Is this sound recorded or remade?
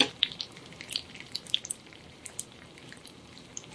remade